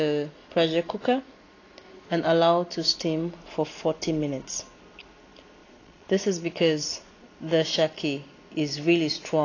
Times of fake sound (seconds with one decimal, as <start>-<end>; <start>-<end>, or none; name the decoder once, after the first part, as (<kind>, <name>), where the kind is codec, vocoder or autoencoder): 5.6-7.3 (vocoder, Vocos)